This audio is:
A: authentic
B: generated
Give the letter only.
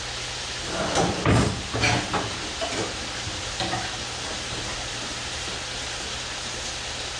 A